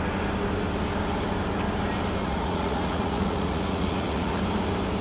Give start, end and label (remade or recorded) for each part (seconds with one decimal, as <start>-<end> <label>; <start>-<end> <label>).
0.0-2.2 recorded; 2.2-4.4 remade; 4.4-5.0 recorded